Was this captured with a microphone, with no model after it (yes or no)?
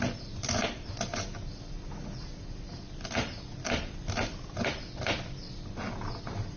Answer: yes